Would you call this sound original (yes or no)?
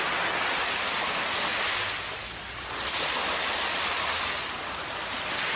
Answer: yes